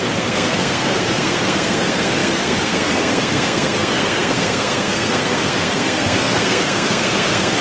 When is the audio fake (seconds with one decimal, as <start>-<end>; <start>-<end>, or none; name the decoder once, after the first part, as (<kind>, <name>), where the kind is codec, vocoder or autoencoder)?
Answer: 0.0-7.6 (codec, SNAC)